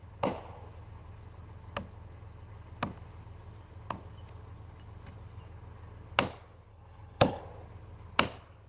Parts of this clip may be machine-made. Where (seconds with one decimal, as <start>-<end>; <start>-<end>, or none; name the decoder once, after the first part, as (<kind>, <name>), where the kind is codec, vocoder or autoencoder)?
6.7-7.4 (codec, HILCodec)